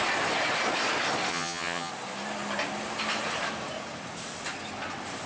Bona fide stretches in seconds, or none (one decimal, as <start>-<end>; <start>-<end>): 0.0-1.3; 1.9-5.3